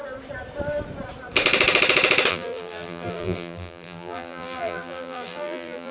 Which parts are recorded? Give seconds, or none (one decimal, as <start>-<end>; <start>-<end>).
0.0-2.3